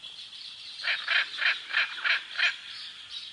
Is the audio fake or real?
real